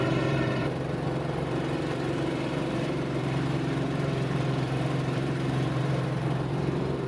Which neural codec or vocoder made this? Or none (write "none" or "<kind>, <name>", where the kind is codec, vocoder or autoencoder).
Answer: vocoder, BigVGAN v2